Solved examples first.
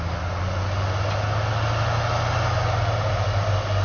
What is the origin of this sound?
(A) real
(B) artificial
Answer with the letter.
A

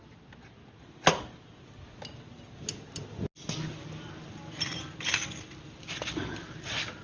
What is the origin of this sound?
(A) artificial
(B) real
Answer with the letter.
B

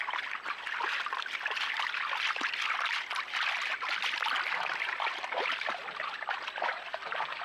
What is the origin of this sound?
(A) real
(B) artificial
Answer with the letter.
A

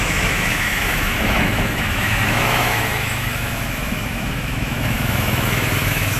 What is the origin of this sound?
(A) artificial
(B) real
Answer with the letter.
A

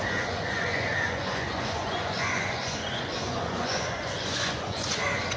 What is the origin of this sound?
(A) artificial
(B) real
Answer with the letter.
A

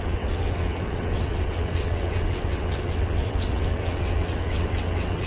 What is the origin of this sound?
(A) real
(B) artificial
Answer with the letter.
B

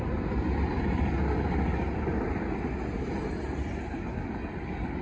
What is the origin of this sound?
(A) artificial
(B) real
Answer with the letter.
B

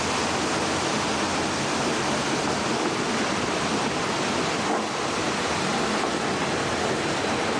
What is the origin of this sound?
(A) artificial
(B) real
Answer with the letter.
B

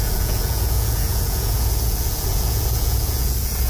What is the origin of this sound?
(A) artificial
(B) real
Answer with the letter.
A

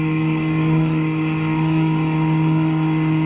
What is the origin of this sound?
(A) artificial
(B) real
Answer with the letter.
A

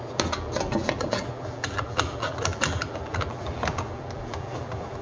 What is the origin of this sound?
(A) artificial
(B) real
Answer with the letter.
A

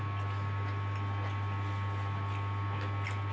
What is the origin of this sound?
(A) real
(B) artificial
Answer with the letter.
A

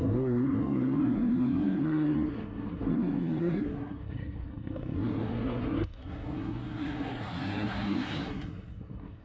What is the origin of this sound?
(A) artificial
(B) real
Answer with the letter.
A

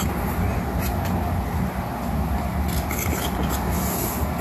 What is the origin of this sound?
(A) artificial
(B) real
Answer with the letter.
B